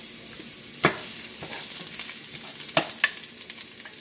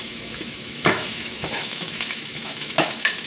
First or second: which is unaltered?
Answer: first